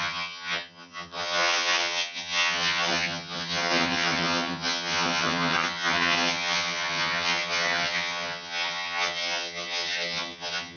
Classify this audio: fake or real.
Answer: fake